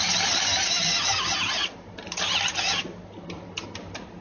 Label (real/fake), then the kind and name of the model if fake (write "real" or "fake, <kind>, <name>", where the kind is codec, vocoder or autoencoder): real